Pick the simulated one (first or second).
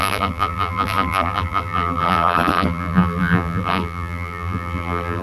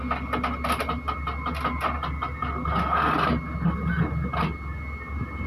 first